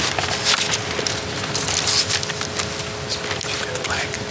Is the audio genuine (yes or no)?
yes